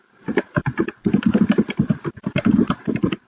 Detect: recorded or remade recorded